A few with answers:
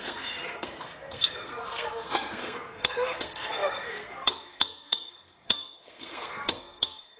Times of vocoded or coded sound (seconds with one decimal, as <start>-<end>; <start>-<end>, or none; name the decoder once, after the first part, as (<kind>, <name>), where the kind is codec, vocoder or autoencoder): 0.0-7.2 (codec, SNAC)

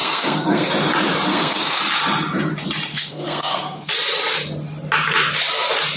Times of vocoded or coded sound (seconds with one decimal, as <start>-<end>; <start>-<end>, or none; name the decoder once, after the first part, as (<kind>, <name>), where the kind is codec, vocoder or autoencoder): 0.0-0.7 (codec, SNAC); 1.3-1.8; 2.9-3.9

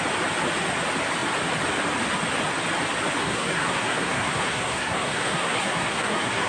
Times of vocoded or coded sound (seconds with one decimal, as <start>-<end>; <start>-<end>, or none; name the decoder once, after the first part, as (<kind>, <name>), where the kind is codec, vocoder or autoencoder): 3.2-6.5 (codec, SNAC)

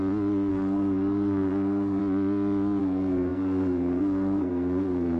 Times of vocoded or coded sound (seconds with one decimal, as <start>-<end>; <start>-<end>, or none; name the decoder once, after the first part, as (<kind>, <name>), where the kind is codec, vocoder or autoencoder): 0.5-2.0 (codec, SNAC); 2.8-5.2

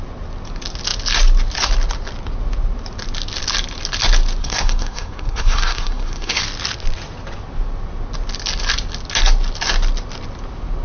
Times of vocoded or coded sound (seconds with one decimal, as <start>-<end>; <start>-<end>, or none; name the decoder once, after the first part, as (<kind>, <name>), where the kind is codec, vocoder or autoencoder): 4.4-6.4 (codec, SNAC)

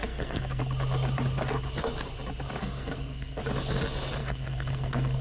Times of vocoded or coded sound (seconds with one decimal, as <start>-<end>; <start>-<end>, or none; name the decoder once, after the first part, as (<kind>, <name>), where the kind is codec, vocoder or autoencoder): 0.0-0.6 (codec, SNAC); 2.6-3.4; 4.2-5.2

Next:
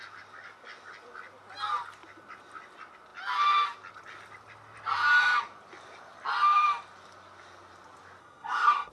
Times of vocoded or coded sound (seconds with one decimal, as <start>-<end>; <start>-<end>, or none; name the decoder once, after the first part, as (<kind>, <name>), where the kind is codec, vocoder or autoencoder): 8.2-8.9 (codec, SNAC)

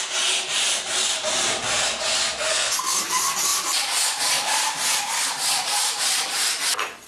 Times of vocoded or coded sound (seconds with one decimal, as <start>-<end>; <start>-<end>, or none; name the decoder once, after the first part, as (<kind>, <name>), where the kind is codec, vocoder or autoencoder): 2.5-3.0 (codec, SNAC)